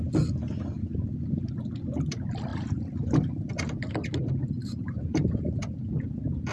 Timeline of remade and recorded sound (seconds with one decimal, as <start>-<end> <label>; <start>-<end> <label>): 0.0-2.5 recorded; 2.5-3.4 remade; 3.4-4.4 recorded; 4.4-5.7 remade; 5.7-6.5 recorded